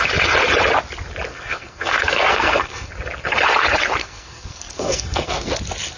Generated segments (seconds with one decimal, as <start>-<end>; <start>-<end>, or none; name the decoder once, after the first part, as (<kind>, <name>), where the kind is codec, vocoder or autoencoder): 1.3-2.9 (codec, SNAC); 4.0-5.5